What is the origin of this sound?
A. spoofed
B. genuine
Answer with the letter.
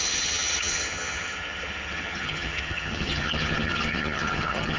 A